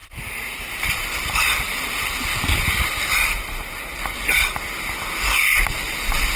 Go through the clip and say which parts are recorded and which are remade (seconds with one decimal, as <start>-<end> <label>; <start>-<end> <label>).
0.0-2.3 remade; 2.3-3.5 recorded; 3.5-3.9 remade; 3.9-6.0 recorded; 6.0-6.4 remade